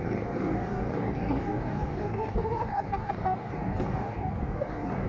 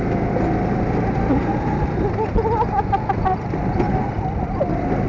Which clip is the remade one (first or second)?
first